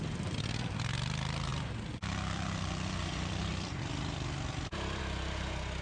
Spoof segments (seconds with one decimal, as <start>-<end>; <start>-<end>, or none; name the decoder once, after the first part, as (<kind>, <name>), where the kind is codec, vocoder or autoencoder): 1.5-5.0 (vocoder, BigVGAN v2)